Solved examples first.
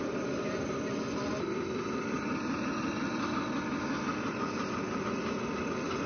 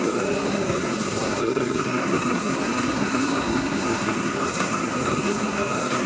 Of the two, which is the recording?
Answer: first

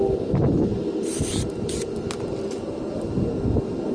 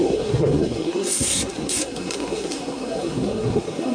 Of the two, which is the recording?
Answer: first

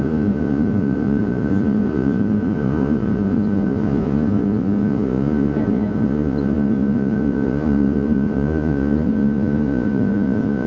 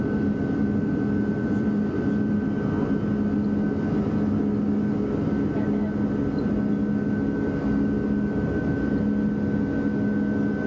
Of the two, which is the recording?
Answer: second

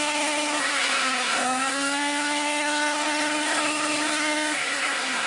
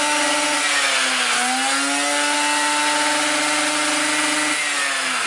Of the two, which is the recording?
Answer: second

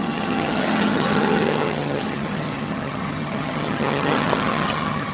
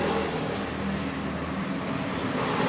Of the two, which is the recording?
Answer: second